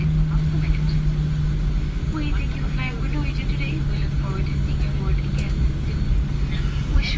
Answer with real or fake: real